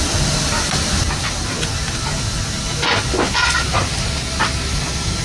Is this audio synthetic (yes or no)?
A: no